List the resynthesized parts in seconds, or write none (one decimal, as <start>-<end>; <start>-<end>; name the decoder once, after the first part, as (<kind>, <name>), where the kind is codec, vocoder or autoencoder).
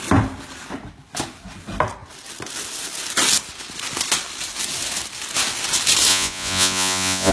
6.1-7.3 (vocoder, Vocos)